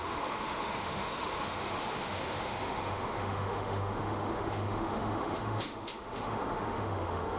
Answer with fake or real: fake